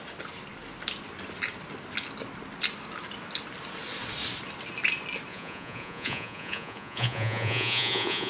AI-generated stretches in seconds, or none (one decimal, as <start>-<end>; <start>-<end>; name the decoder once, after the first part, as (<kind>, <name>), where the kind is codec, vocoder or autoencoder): 5.3-8.3 (vocoder, Vocos)